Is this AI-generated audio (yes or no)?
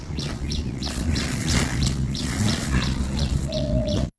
yes